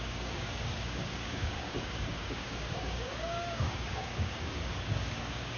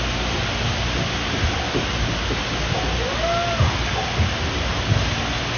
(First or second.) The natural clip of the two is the second